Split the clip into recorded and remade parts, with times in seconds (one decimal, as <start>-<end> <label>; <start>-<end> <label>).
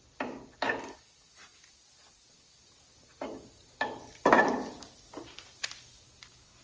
0.0-6.6 recorded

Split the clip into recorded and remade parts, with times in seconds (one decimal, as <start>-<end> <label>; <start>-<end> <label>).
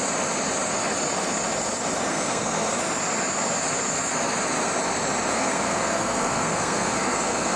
0.0-2.1 recorded; 2.1-2.8 remade; 2.8-5.3 recorded; 5.3-7.6 remade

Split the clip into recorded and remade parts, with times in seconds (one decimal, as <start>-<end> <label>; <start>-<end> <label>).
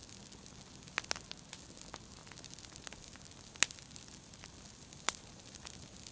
0.0-6.1 recorded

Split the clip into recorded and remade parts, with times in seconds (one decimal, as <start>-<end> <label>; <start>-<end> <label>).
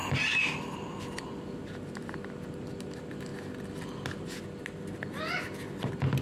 0.0-6.2 recorded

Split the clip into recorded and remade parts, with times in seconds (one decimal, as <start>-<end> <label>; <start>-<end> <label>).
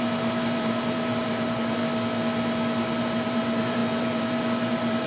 0.0-1.8 remade; 1.8-3.0 recorded; 3.0-5.1 remade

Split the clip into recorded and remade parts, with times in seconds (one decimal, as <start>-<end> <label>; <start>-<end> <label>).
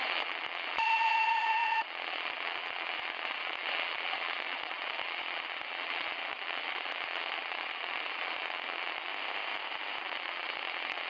0.0-9.1 remade; 9.1-10.0 recorded; 10.0-11.1 remade